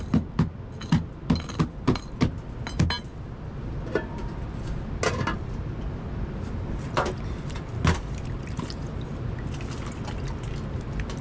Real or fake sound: real